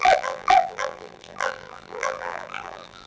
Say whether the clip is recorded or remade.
remade